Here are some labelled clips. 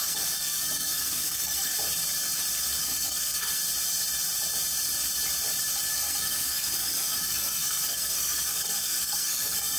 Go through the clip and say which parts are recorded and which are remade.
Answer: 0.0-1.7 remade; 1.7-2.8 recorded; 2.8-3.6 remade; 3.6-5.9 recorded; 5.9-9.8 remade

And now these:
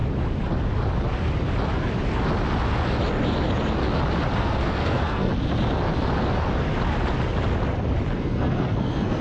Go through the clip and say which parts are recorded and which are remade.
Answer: 0.0-4.4 recorded; 4.4-5.3 remade; 5.3-8.2 recorded; 8.2-9.2 remade

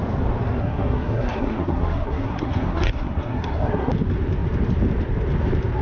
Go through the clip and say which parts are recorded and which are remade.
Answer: 0.0-0.6 recorded; 0.6-3.9 remade; 3.9-5.8 recorded

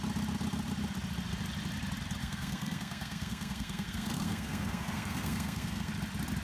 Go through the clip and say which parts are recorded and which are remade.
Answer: 0.0-2.2 recorded; 2.2-5.9 remade; 5.9-6.4 recorded

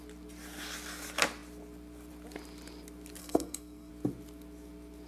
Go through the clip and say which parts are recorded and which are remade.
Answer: 0.0-3.2 recorded; 3.2-3.9 remade; 3.9-5.1 recorded

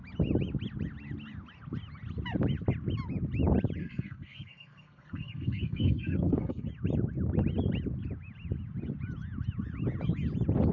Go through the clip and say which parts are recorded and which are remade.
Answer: 0.0-3.8 recorded; 3.8-6.7 remade; 6.7-10.7 recorded

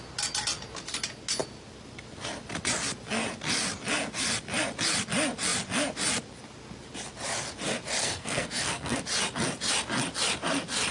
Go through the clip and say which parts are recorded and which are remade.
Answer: 0.0-8.0 recorded; 8.0-9.0 remade; 9.0-10.9 recorded

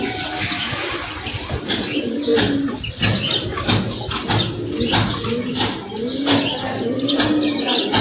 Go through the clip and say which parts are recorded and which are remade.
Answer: 0.0-8.0 recorded